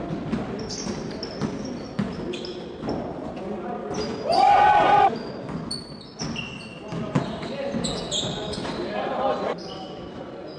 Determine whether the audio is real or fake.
real